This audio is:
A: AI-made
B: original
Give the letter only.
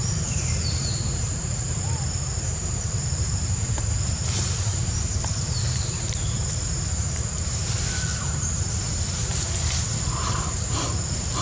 A